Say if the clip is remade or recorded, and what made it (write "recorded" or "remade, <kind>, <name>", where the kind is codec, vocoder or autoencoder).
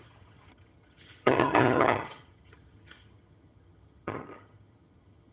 remade, vocoder, HiFi-GAN